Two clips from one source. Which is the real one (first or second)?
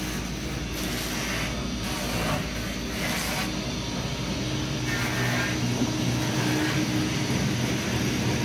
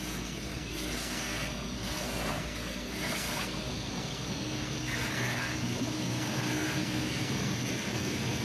first